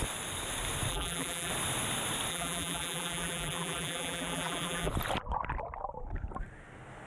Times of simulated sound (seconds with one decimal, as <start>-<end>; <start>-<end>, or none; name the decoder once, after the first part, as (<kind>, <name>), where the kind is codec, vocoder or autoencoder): 0.9-1.5 (vocoder, BigVGAN v2); 2.3-4.9